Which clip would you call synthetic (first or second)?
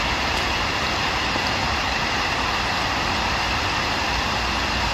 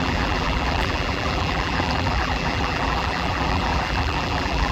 second